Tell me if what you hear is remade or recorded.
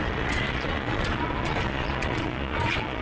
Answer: remade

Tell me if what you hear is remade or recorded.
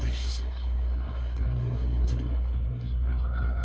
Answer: remade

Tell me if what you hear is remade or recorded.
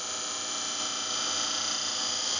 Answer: recorded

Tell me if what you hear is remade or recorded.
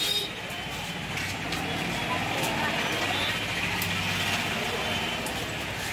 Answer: recorded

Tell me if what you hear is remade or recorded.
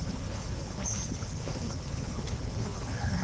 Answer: remade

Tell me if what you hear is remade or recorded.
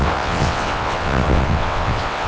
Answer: remade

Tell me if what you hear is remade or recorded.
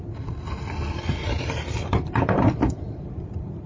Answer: remade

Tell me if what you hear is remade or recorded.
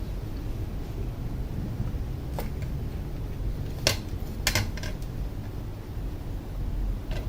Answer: recorded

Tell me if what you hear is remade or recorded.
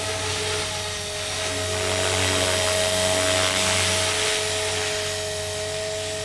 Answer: recorded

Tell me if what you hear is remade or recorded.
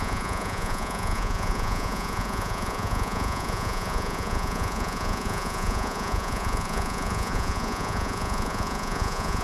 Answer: remade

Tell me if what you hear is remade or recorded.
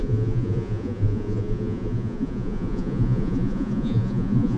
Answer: remade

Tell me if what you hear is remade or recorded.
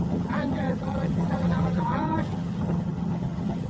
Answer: remade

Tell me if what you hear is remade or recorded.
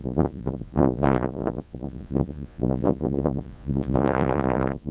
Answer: remade